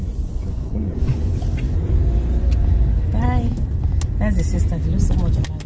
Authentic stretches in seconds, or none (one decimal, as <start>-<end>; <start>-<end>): 1.3-5.7